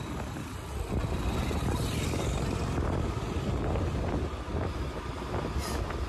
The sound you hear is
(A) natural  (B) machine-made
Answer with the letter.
A